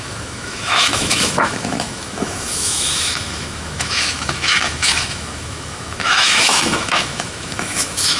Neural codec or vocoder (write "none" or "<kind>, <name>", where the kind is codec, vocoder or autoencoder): autoencoder, DAC-VAE